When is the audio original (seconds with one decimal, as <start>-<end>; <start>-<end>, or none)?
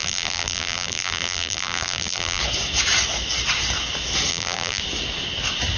2.4-4.3; 4.8-5.8